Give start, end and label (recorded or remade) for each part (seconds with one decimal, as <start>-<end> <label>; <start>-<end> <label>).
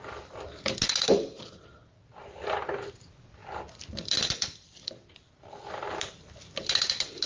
0.0-3.4 recorded; 3.4-4.9 remade; 4.9-7.3 recorded